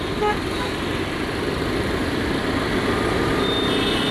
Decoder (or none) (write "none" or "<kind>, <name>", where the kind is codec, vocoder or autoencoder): none